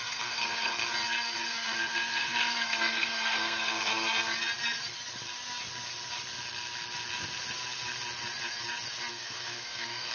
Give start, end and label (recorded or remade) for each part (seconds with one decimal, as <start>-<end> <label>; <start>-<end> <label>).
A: 0.0-0.8 remade; 0.8-1.9 recorded; 1.9-3.9 remade; 3.9-9.1 recorded; 9.1-10.1 remade